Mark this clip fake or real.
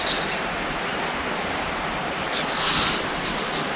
real